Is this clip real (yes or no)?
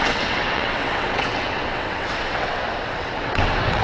no